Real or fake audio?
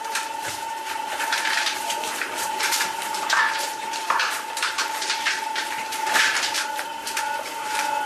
fake